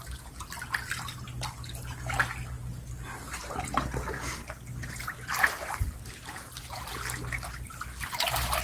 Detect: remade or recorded recorded